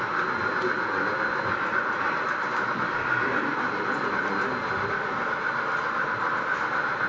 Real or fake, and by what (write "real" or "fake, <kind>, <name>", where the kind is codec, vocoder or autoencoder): real